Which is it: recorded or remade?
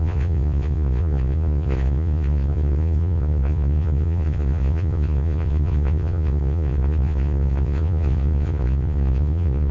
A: remade